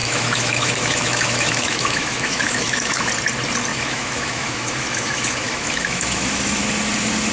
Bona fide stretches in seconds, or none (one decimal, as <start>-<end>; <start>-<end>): 3.1-3.7; 6.6-7.3